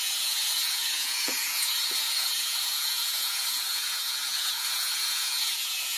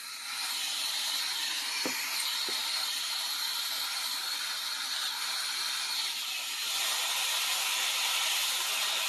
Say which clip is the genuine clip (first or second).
second